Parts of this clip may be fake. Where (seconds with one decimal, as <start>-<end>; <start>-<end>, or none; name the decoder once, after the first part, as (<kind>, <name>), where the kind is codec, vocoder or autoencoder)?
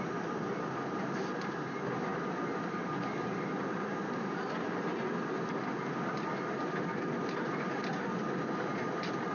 none